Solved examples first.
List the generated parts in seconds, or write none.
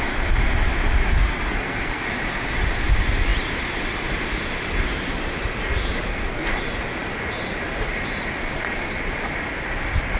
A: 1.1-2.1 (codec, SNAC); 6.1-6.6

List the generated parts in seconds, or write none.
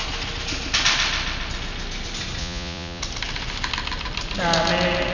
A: 2.4-3.0 (vocoder, Vocos)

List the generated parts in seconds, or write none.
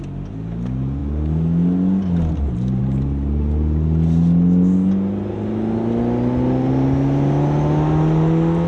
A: none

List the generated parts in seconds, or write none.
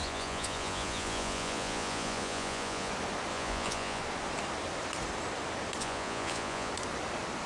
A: 0.0-2.9 (vocoder, Vocos); 3.3-4.0; 5.8-6.7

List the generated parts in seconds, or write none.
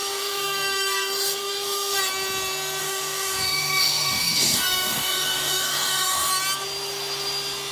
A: 0.0-2.0 (codec, DAC); 2.8-6.3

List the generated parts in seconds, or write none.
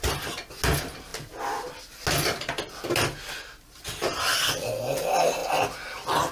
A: none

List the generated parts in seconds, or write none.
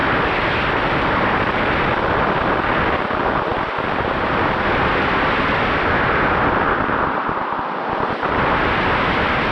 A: 3.0-9.5 (vocoder, BigVGAN v2)